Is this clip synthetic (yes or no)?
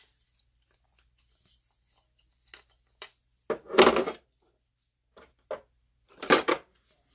no